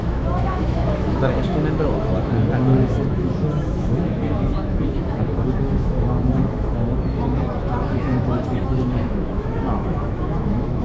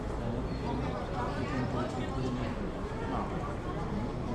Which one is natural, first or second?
second